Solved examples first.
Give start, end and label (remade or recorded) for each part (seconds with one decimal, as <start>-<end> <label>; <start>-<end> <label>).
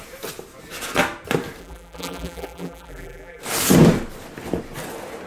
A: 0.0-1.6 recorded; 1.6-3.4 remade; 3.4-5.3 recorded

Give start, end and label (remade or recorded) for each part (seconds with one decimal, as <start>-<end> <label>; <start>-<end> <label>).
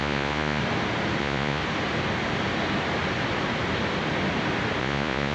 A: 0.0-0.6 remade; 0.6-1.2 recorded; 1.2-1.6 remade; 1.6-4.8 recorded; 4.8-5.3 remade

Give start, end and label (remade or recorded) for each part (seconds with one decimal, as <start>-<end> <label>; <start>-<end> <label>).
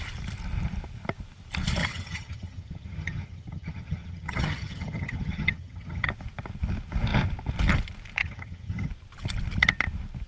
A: 0.0-1.8 recorded; 1.8-6.1 remade; 6.1-8.2 recorded; 8.2-8.9 remade; 8.9-10.3 recorded